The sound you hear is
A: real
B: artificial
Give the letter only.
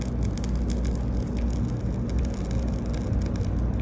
A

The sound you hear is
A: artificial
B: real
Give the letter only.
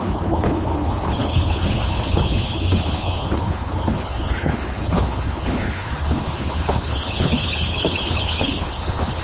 A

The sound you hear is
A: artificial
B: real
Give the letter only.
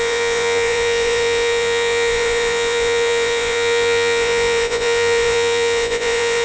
A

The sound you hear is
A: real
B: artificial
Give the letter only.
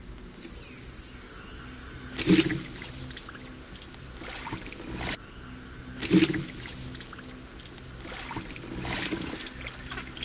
A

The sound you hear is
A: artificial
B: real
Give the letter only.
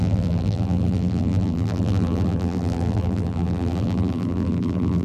A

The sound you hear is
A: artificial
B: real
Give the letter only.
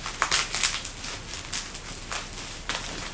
B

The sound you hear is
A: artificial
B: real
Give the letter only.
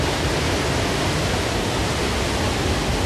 B